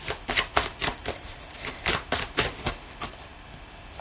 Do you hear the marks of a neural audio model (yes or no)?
no